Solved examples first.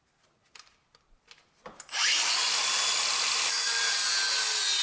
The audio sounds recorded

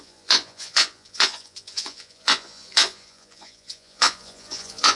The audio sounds remade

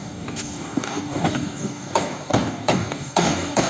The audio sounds remade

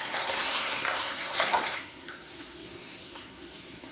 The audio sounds remade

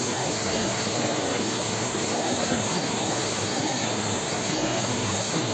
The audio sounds remade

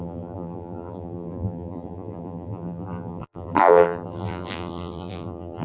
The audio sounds remade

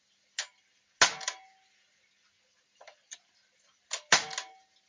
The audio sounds recorded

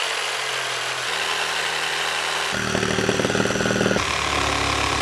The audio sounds recorded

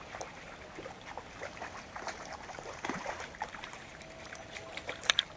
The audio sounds remade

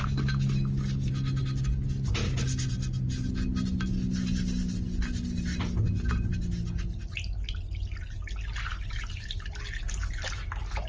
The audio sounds recorded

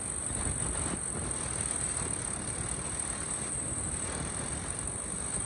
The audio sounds recorded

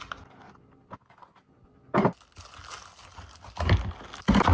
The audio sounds recorded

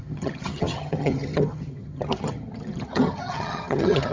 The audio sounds remade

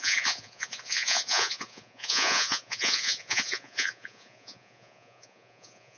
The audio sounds remade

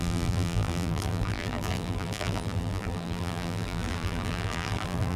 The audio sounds remade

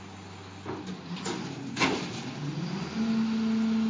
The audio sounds recorded